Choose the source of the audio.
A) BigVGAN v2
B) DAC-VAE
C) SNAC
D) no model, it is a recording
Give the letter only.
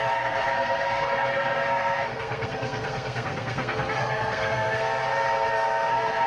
C